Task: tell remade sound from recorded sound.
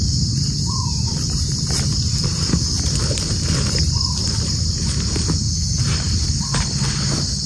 recorded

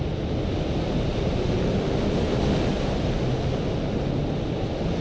recorded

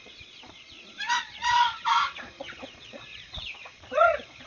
remade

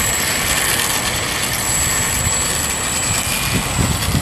recorded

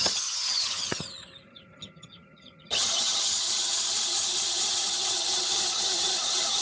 remade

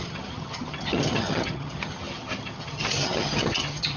remade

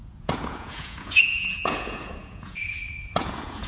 remade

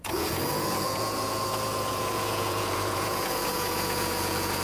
remade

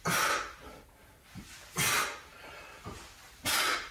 recorded